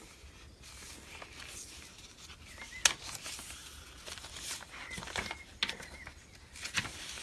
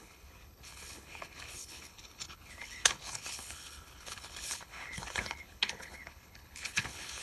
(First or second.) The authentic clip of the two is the first